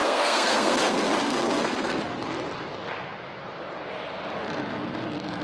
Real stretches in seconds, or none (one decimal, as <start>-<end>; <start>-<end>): 2.0-5.4